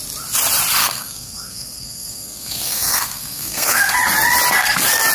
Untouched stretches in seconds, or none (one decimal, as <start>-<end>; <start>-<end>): 0.0-0.8; 3.9-5.1